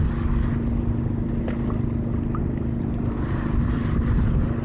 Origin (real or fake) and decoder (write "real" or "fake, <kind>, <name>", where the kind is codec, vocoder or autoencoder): real